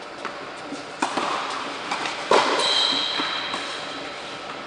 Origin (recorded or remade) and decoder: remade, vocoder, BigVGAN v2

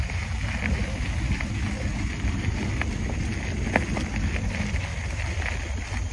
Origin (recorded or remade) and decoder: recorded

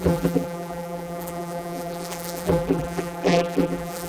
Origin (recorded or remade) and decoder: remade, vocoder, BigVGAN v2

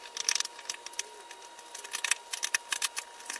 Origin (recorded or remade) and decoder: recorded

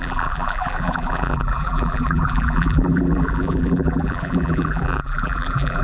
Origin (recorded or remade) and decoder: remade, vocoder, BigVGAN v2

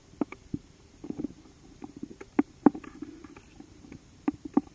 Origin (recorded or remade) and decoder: remade, vocoder, BigVGAN v2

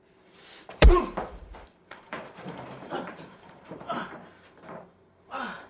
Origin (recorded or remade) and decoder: remade, vocoder, BigVGAN v2